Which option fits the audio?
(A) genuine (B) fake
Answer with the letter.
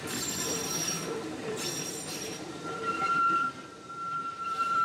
B